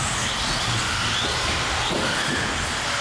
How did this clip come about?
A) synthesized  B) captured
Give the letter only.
B